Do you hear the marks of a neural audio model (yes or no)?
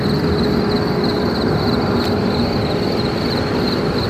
no